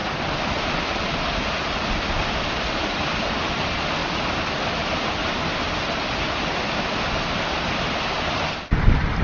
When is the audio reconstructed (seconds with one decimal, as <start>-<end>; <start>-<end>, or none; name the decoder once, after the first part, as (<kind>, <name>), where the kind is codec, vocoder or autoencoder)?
none